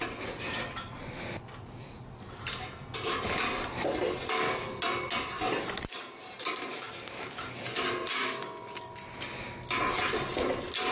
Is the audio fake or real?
real